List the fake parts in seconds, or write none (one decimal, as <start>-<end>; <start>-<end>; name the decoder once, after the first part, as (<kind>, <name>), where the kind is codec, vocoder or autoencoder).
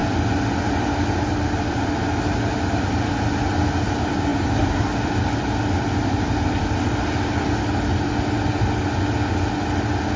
none